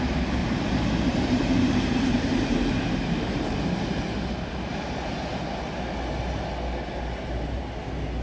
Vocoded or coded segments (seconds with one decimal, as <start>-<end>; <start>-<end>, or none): 0.4-4.0